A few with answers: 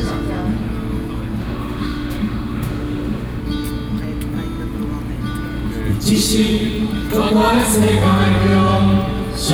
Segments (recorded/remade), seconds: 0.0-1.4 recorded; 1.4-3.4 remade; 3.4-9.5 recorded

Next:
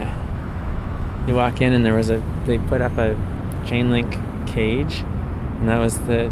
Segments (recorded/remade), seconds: 0.0-1.3 remade; 1.3-6.3 recorded